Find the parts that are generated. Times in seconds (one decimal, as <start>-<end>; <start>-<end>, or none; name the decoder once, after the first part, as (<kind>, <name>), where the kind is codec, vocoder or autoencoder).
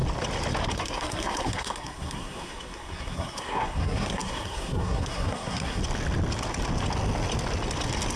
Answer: 0.8-5.8 (codec, SNAC)